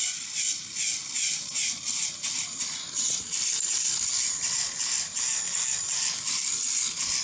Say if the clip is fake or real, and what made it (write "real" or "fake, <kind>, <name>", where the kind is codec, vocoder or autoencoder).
real